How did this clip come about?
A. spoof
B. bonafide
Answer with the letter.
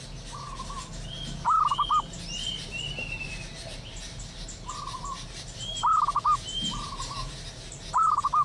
B